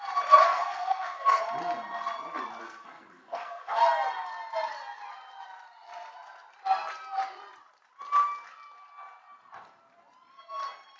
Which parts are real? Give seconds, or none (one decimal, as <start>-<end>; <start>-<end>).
0.0-0.4; 1.4-2.6; 3.8-11.0